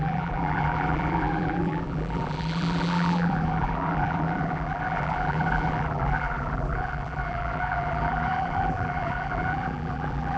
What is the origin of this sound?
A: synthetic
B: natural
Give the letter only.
A